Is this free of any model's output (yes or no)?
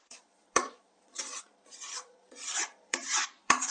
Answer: no